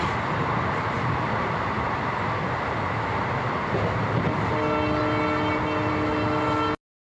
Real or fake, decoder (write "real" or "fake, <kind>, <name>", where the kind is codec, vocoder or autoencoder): real